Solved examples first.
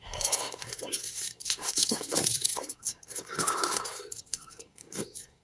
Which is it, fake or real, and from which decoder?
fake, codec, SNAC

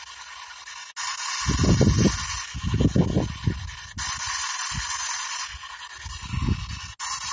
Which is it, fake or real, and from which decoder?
real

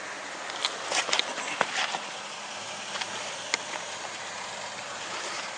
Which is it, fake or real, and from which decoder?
real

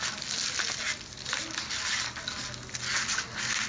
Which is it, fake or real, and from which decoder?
real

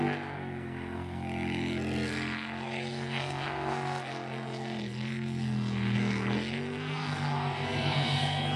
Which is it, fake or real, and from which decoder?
fake, codec, SNAC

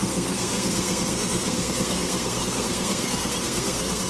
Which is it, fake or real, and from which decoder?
fake, codec, SNAC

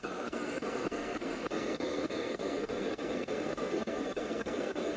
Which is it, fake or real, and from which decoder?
fake, codec, SNAC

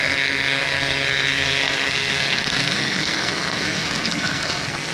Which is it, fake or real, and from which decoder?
fake, codec, SNAC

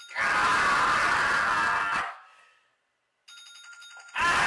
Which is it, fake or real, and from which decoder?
real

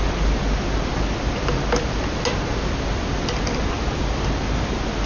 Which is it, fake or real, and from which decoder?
real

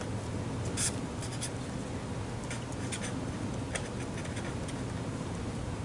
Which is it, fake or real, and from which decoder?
real